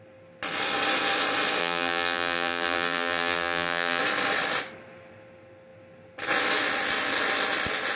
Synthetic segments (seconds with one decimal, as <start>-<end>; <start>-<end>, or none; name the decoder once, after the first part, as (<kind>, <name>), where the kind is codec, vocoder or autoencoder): 1.6-4.0 (vocoder, BigVGAN v2)